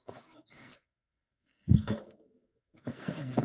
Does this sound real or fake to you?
fake